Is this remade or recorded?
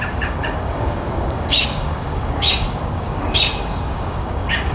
remade